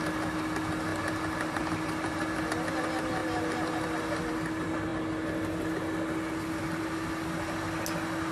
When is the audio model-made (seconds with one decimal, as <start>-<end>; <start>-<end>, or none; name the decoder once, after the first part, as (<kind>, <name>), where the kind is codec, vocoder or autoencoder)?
none